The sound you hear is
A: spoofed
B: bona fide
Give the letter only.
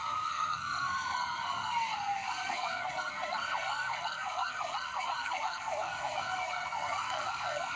A